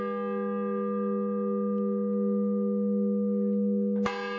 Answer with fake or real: real